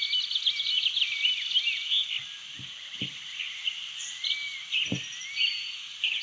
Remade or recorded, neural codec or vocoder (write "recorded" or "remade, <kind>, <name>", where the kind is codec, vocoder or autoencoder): recorded